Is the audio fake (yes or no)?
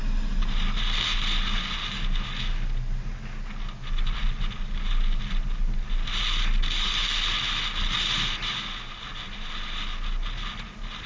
no